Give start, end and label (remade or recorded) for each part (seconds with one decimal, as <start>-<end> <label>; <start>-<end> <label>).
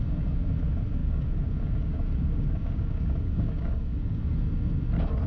0.0-1.0 recorded; 1.0-4.2 remade; 4.2-5.3 recorded